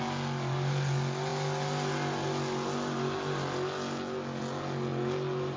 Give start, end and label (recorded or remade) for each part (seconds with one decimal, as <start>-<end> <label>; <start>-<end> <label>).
0.0-5.6 recorded